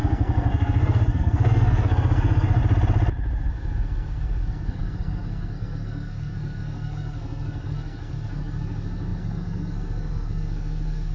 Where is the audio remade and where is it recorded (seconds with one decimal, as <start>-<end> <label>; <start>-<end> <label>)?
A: 0.0-2.6 remade; 2.6-3.5 recorded; 3.5-11.1 remade